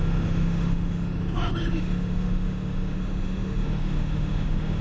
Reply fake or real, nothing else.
fake